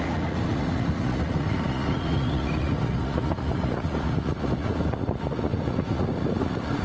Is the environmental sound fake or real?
fake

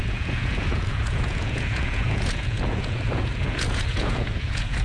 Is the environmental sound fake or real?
fake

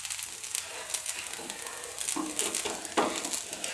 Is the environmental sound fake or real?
real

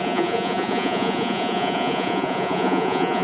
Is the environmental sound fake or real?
fake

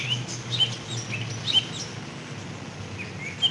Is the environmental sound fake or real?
real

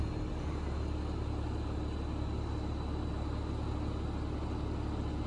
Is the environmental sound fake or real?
real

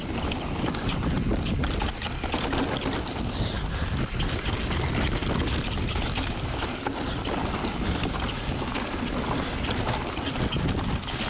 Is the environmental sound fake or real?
real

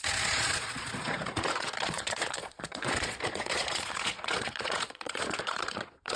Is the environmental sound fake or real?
fake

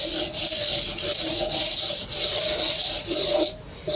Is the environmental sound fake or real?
real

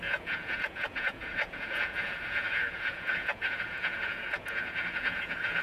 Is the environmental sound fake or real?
fake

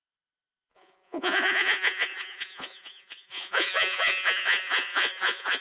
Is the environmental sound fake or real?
fake